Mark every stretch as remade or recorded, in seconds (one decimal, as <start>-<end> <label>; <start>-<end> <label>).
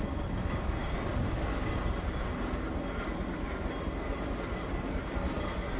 0.0-5.8 recorded